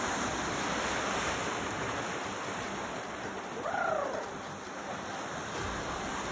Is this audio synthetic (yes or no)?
no